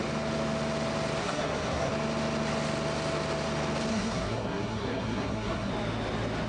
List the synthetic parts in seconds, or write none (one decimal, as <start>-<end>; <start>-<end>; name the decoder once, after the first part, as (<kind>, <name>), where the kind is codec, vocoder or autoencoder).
1.2-1.9 (codec, SNAC); 3.9-5.7